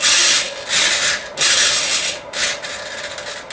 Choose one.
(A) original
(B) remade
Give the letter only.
A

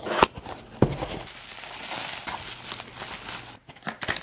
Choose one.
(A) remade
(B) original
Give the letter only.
B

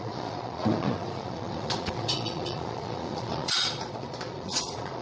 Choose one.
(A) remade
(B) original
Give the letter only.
A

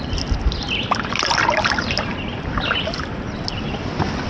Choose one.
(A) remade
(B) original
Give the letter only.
B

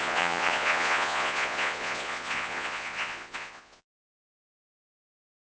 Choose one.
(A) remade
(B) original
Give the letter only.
A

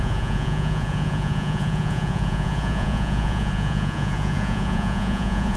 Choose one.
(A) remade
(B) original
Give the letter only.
A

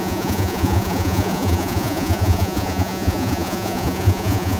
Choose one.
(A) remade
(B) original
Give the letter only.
A